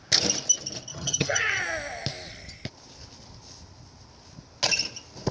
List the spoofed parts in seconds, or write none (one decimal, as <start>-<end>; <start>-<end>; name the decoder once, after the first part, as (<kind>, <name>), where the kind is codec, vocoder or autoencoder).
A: 0.9-1.6 (vocoder, HiFi-GAN)